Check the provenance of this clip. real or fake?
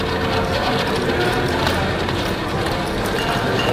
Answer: real